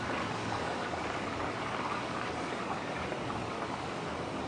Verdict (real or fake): fake